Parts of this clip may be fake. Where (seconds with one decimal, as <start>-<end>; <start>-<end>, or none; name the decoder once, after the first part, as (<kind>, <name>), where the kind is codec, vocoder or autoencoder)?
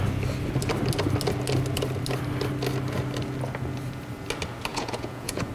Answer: 4.7-5.5 (vocoder, Vocos)